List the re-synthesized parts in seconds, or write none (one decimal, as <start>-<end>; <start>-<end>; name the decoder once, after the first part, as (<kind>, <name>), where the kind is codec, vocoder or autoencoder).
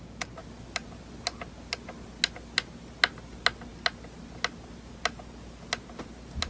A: none